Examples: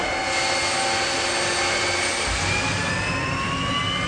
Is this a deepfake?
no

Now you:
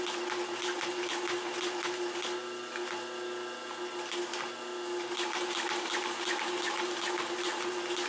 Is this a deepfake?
no